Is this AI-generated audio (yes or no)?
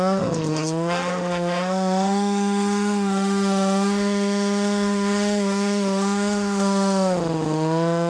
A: yes